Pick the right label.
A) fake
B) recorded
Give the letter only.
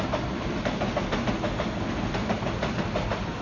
B